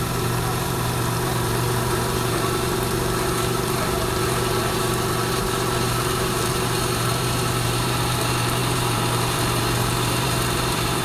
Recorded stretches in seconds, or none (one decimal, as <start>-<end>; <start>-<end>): none